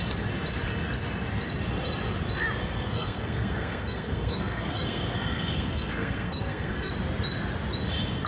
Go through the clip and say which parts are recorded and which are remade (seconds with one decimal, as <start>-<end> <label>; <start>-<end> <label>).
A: 0.0-2.6 recorded; 2.6-6.9 remade; 6.9-8.3 recorded